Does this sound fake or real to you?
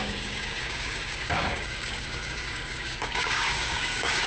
fake